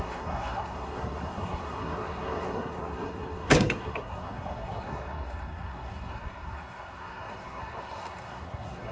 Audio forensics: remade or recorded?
remade